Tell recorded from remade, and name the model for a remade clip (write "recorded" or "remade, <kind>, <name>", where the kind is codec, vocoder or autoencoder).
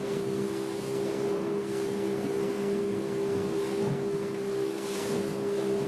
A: remade, codec, SNAC